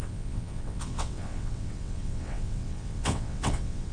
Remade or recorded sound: remade